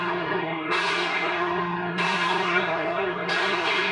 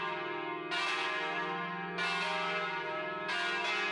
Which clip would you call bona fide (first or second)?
second